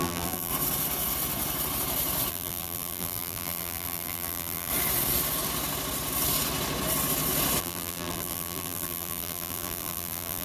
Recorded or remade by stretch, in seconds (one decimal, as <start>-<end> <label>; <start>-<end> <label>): 0.0-0.5 remade; 0.5-2.3 recorded; 2.3-4.7 remade; 4.7-7.6 recorded; 7.6-10.4 remade